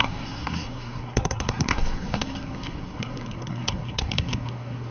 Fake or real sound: fake